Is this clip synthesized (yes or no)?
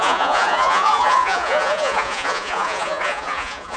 yes